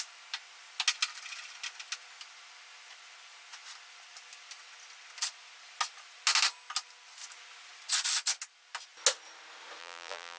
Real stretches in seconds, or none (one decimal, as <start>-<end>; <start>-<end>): 0.0-9.8